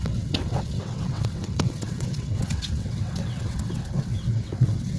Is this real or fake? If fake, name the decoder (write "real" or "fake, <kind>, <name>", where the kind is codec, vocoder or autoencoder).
fake, vocoder, WaveNeXt